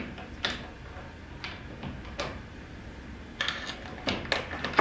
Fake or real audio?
real